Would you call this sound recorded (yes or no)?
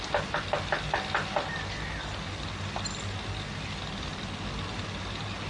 yes